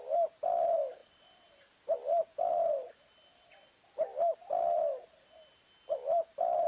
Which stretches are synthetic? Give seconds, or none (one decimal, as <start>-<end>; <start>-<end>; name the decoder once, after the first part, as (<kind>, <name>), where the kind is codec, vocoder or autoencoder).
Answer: none